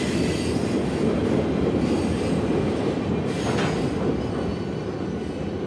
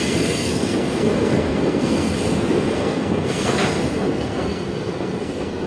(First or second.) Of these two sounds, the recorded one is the first